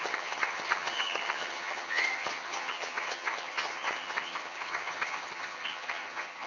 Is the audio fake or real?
fake